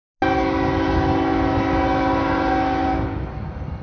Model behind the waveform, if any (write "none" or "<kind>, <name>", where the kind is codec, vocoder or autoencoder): none